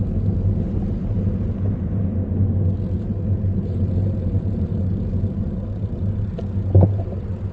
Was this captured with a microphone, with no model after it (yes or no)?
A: yes